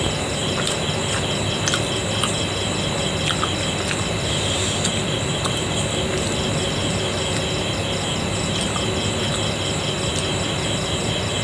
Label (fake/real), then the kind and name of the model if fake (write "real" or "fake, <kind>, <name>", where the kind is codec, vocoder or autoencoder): real